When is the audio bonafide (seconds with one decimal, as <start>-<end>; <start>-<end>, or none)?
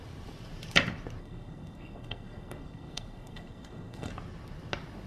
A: 0.0-1.2; 4.1-5.1